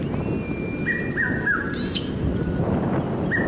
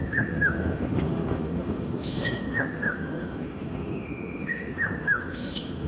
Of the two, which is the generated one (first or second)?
second